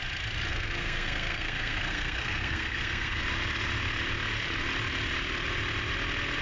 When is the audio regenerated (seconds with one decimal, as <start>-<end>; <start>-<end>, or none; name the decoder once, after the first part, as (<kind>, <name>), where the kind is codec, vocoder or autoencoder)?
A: 0.5-3.2 (codec, SNAC)